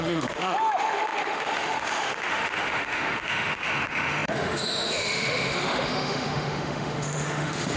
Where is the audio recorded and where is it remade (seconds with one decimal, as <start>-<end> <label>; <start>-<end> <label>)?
0.0-7.8 remade